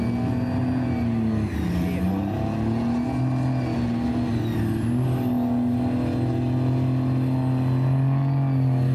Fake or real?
real